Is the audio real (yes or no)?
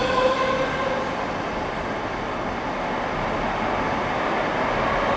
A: yes